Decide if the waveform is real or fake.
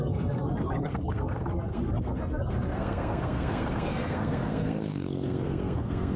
fake